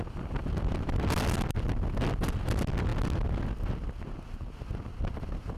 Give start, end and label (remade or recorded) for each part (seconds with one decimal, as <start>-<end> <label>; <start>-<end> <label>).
0.0-5.6 recorded